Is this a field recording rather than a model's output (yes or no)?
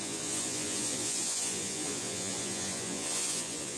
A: no